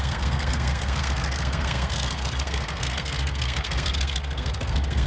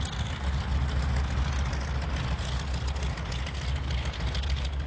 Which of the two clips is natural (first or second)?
second